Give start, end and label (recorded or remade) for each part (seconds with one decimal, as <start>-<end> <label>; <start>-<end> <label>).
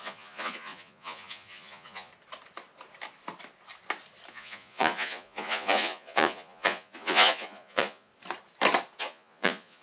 0.0-2.1 remade; 2.1-4.3 recorded; 4.3-8.1 remade; 8.1-9.0 recorded; 9.0-9.8 remade